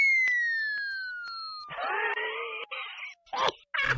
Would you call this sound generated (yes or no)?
no